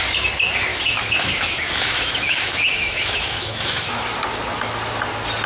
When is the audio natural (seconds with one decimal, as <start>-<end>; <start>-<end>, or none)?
0.0-0.7; 4.0-5.5